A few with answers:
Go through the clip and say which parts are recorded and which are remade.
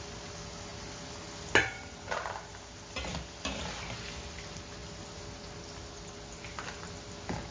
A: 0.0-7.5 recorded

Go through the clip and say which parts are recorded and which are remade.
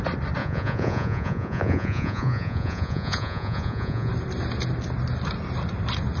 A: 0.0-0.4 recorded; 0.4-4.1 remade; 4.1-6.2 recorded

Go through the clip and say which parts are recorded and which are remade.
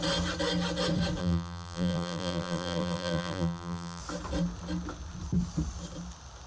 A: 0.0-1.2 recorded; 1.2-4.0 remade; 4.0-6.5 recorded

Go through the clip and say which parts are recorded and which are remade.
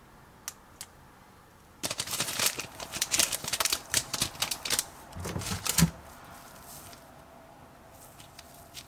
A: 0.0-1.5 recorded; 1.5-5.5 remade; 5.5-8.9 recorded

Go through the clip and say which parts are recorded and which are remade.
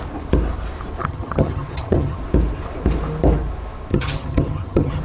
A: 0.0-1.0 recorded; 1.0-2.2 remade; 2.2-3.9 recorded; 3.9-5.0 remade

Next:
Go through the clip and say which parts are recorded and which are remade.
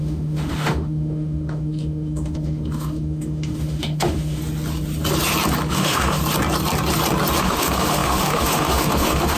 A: 0.0-4.4 remade; 4.4-5.7 recorded; 5.7-6.2 remade; 6.2-7.4 recorded; 7.4-9.4 remade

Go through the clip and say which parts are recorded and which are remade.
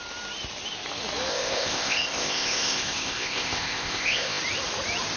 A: 0.0-1.3 recorded; 1.3-4.4 remade; 4.4-5.2 recorded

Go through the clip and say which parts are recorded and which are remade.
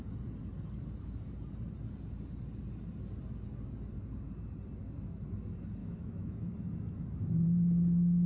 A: 0.0-5.8 recorded; 5.8-6.5 remade; 6.5-8.3 recorded